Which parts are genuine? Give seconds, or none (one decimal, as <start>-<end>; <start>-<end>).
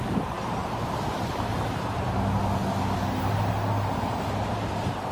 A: 0.0-5.1